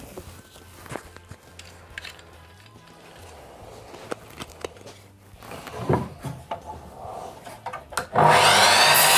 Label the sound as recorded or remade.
recorded